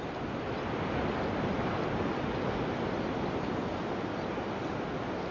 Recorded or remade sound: recorded